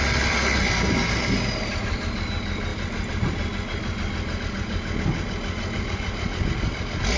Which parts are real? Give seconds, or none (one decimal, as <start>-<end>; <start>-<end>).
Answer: 0.0-7.2